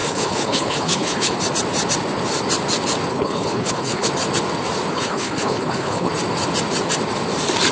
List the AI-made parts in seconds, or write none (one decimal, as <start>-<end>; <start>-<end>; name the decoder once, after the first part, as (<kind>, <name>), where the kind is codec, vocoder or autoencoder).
0.0-1.4 (codec, HILCodec); 3.1-4.1; 4.9-6.1